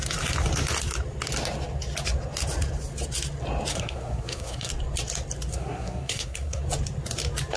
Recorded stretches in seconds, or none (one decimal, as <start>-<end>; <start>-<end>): 0.0-3.7; 4.7-5.5; 6.6-7.6

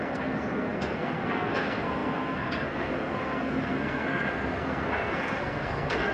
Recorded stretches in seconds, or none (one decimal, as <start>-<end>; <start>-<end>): none

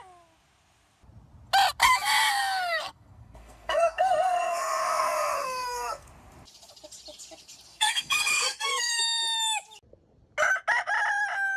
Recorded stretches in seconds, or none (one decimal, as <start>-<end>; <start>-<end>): 0.0-1.8; 6.1-7.7; 9.0-11.6